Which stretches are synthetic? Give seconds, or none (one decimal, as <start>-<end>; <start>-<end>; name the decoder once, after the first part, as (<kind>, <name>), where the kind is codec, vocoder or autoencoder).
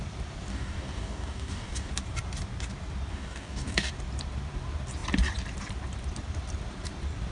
0.5-1.9 (codec, DAC); 3.1-3.9